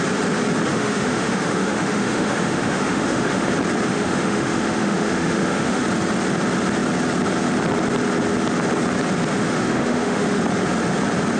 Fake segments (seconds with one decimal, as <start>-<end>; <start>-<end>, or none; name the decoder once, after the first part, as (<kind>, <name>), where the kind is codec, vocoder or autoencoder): 0.7-3.5 (autoencoder, DAC-VAE); 3.9-5.8; 9.3-10.4